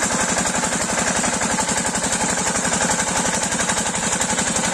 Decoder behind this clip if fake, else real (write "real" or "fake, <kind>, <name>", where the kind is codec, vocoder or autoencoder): real